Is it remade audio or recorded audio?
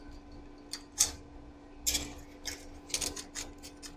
recorded